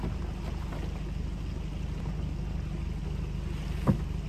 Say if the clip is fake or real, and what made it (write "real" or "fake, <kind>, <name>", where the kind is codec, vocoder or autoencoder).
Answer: real